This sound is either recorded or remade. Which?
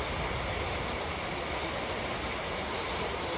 recorded